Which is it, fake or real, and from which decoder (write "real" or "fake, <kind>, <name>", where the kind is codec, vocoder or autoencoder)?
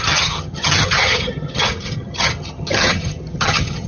fake, vocoder, HiFi-GAN